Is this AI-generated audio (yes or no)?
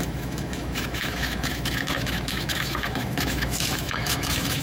yes